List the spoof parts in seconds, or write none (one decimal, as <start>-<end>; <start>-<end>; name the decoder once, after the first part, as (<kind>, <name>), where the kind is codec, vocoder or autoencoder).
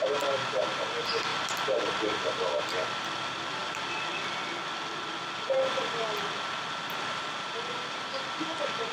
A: none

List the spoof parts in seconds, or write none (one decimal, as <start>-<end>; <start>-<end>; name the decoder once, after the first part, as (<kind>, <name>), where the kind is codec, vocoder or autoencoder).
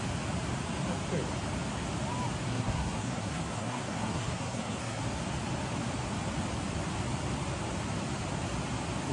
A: 2.5-5.0 (codec, SNAC)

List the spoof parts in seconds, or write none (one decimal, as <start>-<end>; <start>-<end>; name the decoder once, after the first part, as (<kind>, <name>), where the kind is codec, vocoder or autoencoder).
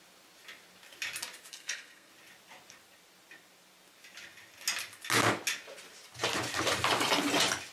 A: 1.5-2.1 (codec, SNAC)